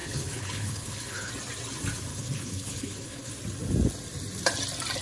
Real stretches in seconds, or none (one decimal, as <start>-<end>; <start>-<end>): 1.3-2.1; 3.3-5.0